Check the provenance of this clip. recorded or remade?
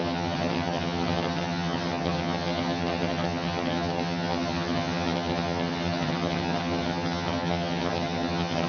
remade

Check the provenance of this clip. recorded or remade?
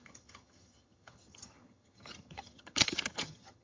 remade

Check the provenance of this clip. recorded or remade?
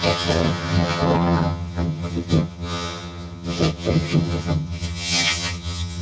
remade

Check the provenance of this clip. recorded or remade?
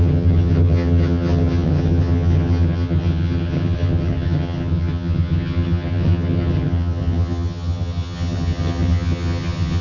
remade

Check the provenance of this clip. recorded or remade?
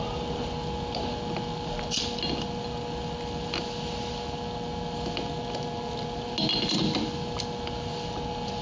recorded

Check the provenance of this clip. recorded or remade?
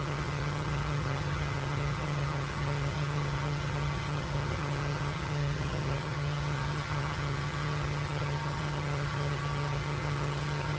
remade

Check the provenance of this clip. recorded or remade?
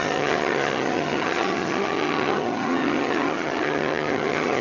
remade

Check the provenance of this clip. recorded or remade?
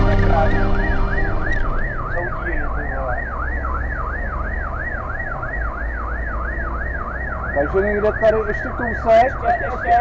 recorded